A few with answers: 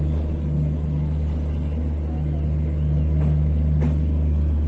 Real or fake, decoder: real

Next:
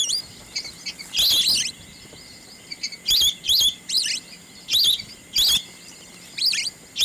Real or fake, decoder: real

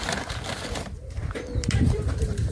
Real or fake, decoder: fake, vocoder, BigVGAN v2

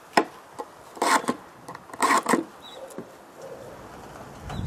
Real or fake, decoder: real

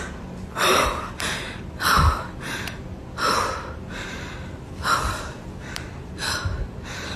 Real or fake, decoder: fake, vocoder, BigVGAN v2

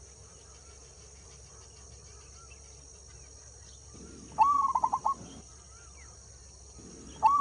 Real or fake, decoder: real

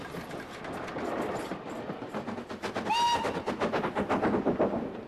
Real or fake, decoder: real